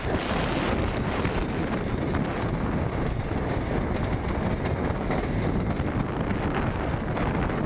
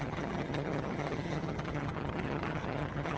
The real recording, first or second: first